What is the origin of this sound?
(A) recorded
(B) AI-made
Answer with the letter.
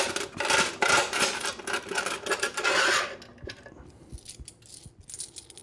A